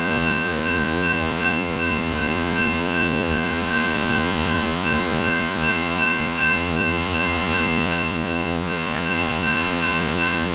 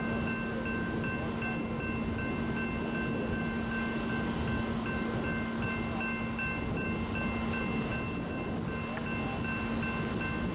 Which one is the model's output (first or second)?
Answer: first